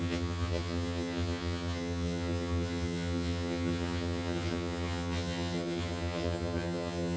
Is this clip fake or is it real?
fake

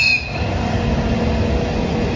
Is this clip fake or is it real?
real